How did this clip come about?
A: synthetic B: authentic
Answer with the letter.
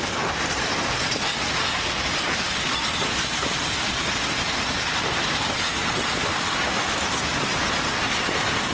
B